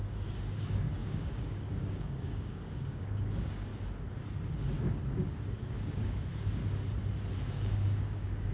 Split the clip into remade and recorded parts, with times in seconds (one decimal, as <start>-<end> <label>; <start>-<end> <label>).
0.0-3.7 remade; 3.7-5.1 recorded; 5.1-6.6 remade; 6.6-7.5 recorded; 7.5-8.5 remade